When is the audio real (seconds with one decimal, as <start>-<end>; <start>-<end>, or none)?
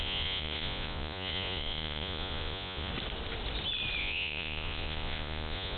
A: 2.9-4.0